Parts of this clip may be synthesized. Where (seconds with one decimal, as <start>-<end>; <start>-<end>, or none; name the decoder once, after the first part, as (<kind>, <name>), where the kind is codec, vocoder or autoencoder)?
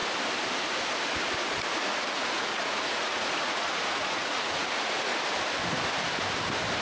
1.7-5.1 (vocoder, Vocos)